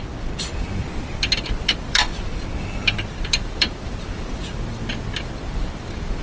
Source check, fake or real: fake